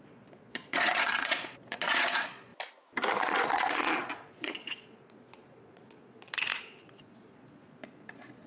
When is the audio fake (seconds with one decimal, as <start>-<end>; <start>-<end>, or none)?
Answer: 0.0-2.5; 3.2-8.5